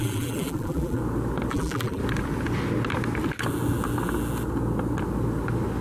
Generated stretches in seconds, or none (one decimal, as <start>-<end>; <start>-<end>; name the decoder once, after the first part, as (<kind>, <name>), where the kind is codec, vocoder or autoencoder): 0.0-1.0 (vocoder, BigVGAN v2); 1.5-2.0